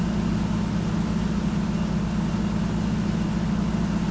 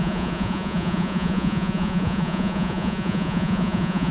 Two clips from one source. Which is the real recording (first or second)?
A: first